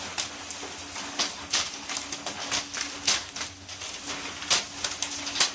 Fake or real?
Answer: real